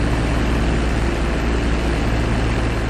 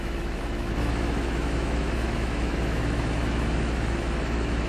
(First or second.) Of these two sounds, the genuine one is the first